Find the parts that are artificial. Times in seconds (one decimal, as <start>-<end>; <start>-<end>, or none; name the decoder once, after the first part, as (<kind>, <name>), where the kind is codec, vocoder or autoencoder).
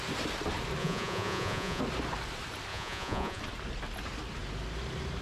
0.8-1.8 (vocoder, Vocos); 2.7-3.4